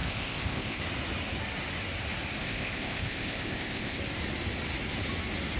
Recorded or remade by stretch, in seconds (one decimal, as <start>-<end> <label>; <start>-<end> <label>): 0.0-0.8 remade; 0.8-2.4 recorded; 2.4-4.0 remade; 4.0-5.6 recorded